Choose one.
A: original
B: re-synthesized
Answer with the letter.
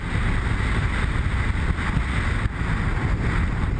A